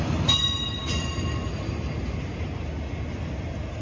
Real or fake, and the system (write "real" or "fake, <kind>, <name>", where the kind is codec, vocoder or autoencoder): real